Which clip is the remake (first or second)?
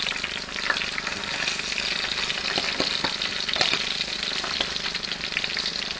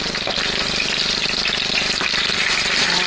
second